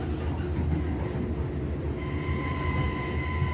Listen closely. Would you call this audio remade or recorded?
recorded